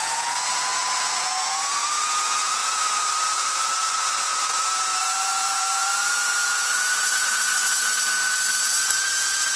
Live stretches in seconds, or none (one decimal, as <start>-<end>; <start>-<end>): 7.9-8.6